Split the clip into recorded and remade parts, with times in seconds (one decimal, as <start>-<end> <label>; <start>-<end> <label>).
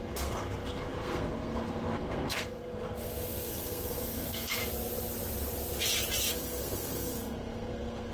0.0-4.6 remade; 4.6-6.3 recorded; 6.3-8.1 remade